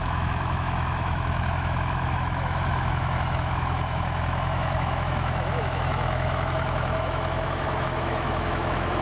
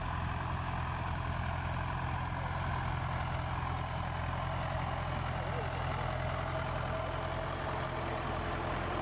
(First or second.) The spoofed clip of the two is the first